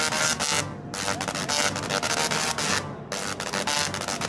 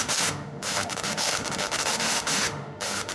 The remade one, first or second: second